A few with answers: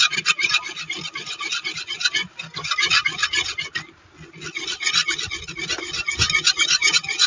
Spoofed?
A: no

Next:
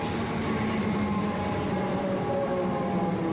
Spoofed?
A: no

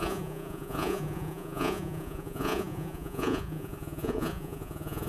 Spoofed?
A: yes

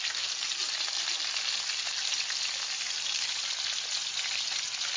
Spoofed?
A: no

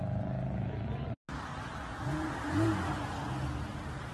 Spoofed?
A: no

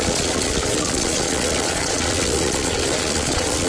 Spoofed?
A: yes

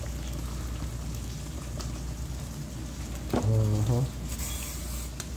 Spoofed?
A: no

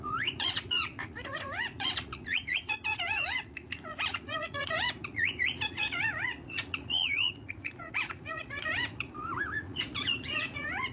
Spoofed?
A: yes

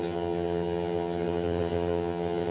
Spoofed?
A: yes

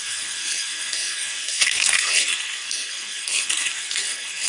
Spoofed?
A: yes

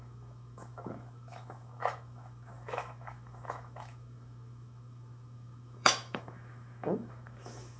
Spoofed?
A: yes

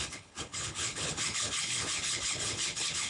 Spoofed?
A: yes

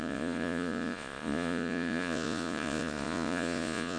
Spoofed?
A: yes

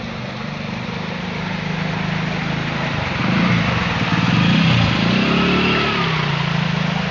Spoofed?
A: no